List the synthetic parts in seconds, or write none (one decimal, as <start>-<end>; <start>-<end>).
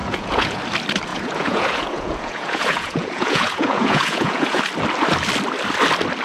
0.0-0.6; 1.1-4.6